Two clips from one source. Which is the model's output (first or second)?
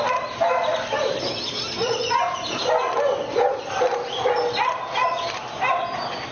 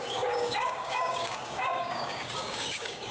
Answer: second